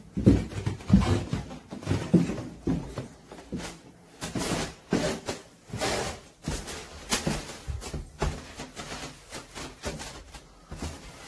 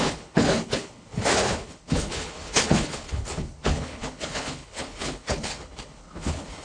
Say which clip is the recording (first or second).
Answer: first